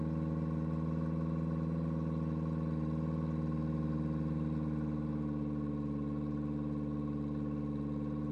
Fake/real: real